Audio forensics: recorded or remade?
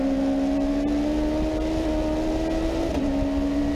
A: recorded